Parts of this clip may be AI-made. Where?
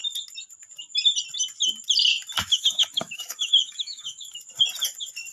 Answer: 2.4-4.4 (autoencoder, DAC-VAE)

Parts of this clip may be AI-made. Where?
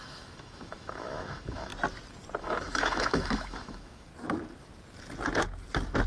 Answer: 0.0-1.7 (autoencoder, DAC-VAE); 2.4-4.1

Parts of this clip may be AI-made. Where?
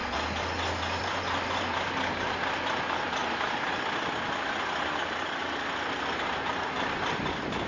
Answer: 1.0-3.2 (vocoder, BigVGAN v2); 3.7-7.7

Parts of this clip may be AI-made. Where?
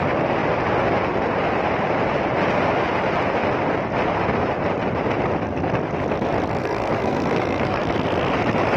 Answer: 6.6-7.8 (codec, SNAC)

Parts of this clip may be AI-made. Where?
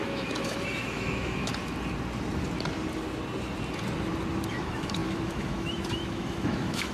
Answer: 0.0-1.5 (autoencoder, DAC-VAE); 4.5-6.9